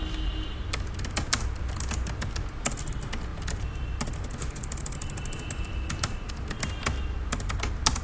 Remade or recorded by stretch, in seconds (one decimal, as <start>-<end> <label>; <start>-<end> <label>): 0.0-8.0 recorded